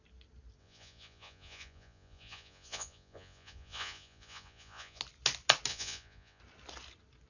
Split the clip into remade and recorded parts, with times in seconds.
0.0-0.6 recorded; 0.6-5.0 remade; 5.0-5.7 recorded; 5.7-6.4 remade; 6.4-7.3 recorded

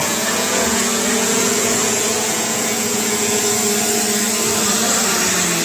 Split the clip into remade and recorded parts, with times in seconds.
0.0-3.4 remade; 3.4-5.6 recorded

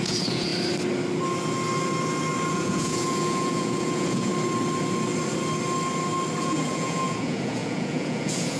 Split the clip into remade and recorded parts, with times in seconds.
0.0-0.5 remade; 0.5-2.5 recorded; 2.5-4.3 remade; 4.3-6.4 recorded; 6.4-8.6 remade

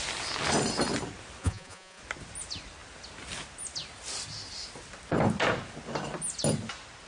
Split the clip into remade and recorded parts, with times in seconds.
0.0-1.4 recorded; 1.4-2.0 remade; 2.0-7.1 recorded